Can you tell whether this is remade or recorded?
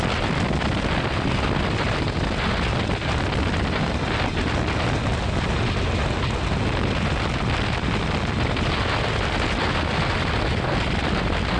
recorded